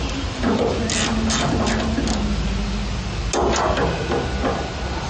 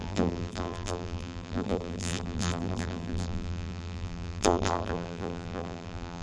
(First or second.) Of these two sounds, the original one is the first